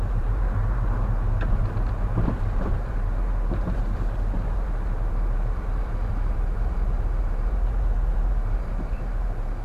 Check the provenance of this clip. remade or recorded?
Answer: remade